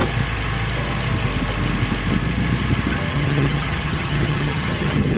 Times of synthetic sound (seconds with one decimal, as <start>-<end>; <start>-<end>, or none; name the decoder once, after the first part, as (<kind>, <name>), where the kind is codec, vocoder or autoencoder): 3.1-5.2 (vocoder, HiFi-GAN)